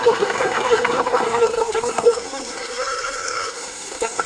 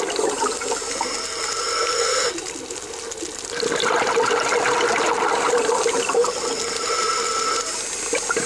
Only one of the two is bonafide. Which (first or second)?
second